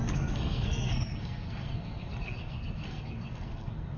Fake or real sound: fake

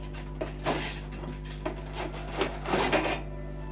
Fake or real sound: real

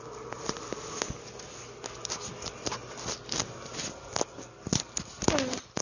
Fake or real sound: real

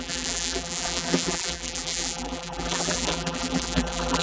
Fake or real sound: fake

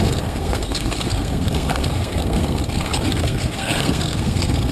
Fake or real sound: fake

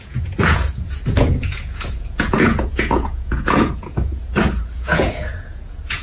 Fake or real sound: fake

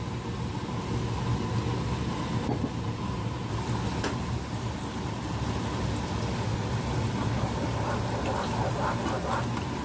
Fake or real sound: real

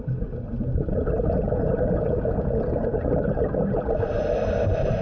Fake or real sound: real